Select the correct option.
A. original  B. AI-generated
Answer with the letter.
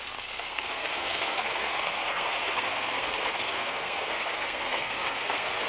B